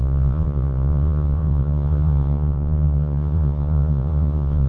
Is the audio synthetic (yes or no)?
yes